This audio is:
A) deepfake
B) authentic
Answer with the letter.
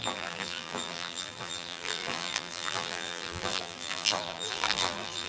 A